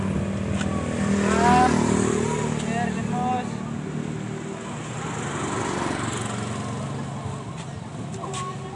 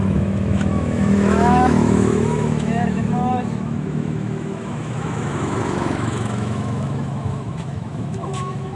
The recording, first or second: first